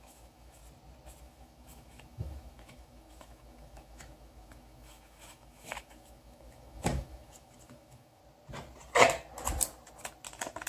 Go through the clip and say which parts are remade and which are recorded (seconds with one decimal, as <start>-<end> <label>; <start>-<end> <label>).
0.0-0.6 remade; 0.6-1.2 recorded; 1.2-8.2 remade; 8.2-10.7 recorded